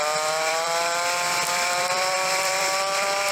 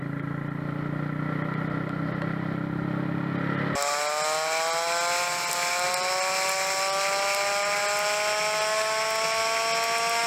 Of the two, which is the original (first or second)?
second